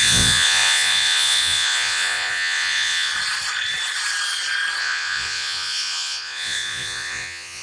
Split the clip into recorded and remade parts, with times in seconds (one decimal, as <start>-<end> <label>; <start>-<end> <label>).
0.0-3.1 remade; 3.1-4.8 recorded; 4.8-7.6 remade